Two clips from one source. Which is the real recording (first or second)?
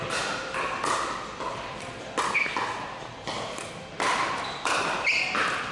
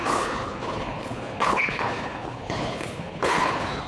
first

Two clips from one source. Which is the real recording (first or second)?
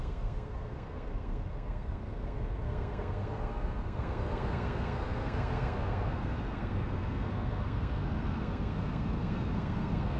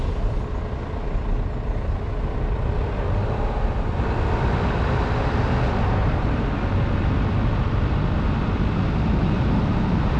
second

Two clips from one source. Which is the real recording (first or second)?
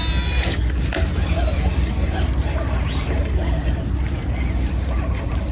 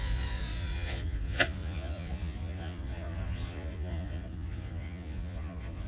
first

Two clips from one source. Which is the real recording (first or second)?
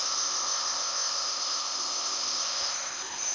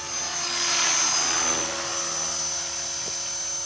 second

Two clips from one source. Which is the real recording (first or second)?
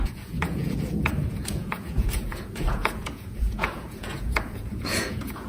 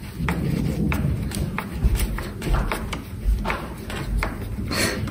second